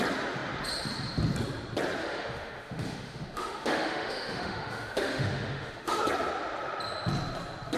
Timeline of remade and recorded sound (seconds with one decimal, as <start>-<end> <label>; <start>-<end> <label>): 0.0-2.0 recorded; 2.0-6.0 remade; 6.0-7.8 recorded